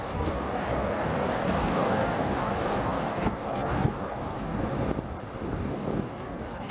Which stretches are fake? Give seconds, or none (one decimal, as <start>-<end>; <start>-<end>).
0.0-4.6; 5.5-6.7